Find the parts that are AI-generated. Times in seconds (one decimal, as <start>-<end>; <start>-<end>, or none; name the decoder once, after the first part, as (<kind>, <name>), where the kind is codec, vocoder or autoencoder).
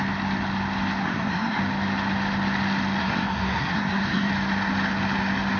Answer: 1.0-1.6 (codec, SNAC); 3.0-4.3